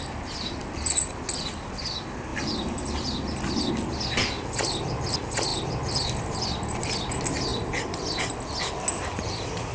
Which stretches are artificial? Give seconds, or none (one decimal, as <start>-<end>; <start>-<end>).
none